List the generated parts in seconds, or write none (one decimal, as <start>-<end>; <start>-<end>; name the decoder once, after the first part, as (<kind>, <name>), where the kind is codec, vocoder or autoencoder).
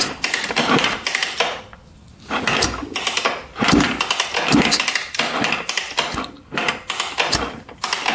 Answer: 0.6-1.6 (vocoder, BigVGAN v2); 2.8-4.0